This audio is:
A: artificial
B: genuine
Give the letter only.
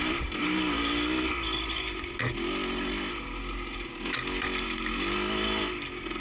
B